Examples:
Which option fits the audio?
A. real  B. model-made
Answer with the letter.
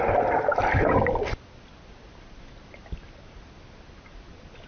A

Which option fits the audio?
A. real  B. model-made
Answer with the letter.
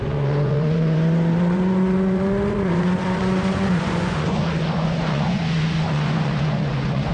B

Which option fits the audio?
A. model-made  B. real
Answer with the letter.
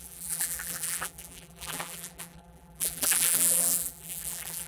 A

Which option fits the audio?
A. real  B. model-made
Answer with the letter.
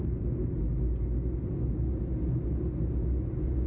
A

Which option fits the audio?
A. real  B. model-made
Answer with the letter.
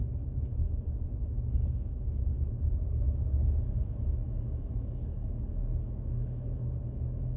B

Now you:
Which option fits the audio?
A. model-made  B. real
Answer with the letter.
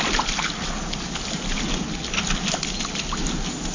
B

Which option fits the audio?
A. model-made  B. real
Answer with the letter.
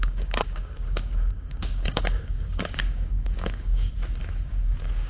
A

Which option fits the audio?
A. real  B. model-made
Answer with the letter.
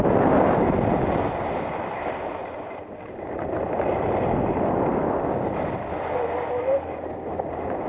A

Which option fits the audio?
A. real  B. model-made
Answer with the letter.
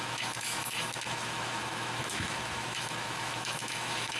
B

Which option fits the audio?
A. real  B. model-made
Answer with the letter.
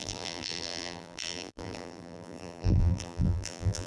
B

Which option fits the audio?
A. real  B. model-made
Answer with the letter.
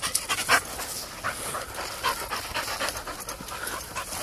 A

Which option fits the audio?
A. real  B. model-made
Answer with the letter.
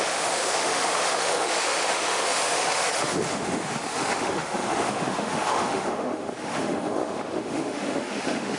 B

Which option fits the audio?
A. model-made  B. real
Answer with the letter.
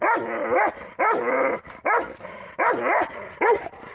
B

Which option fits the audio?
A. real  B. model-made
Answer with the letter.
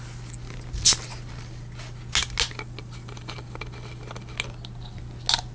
A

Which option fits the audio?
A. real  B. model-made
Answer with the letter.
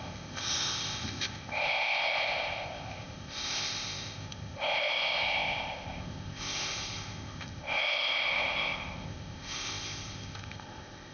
B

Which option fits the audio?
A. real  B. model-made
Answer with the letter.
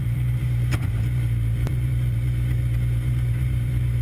B